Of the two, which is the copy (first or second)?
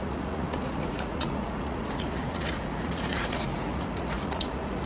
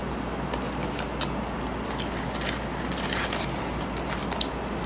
first